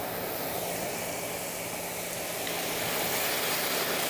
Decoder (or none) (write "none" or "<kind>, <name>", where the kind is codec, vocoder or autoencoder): none